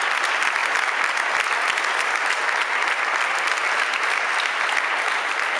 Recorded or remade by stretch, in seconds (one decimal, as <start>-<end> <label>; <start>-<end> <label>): 0.0-5.6 recorded